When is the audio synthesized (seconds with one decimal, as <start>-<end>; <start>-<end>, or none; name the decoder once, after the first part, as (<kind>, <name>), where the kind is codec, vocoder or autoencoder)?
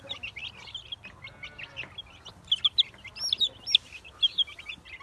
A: none